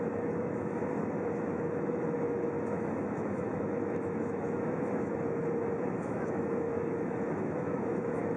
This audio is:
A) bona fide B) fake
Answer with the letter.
B